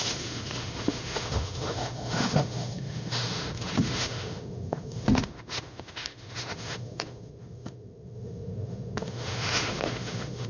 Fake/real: fake